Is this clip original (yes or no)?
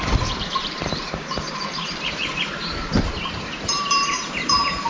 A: no